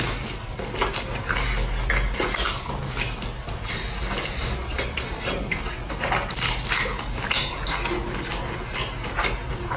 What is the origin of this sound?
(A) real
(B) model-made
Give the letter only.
A